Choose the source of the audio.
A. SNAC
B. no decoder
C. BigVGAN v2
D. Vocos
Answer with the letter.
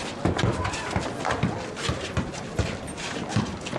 B